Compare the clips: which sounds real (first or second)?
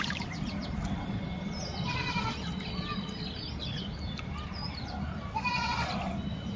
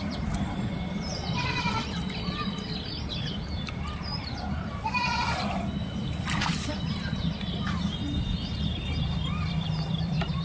first